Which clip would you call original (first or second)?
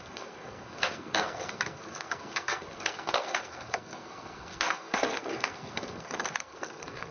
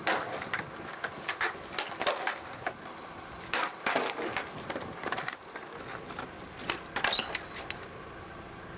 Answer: second